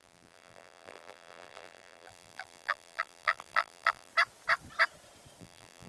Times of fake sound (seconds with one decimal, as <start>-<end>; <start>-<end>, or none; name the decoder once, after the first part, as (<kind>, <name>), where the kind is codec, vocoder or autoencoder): 0.0-4.1 (vocoder, BigVGAN v2); 5.4-5.9

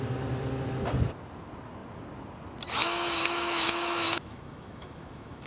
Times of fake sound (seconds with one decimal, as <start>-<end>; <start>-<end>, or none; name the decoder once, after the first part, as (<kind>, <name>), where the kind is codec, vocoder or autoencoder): 2.8-5.5 (autoencoder, DAC-VAE)

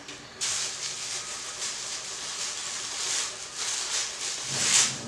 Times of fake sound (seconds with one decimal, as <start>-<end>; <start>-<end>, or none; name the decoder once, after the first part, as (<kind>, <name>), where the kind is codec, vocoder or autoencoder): none

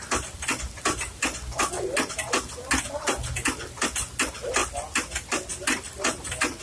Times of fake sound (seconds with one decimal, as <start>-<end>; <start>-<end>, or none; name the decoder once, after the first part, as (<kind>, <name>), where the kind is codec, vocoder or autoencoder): 4.6-5.5 (vocoder, BigVGAN v2)